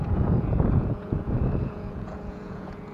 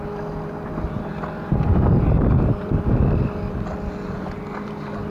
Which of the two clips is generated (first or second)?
first